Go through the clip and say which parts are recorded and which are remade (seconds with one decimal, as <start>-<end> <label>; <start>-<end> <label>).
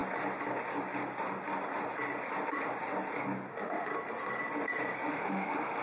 0.0-3.5 recorded; 3.5-3.9 remade; 3.9-5.1 recorded; 5.1-5.8 remade